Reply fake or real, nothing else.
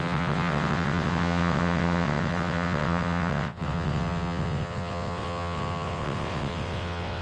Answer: fake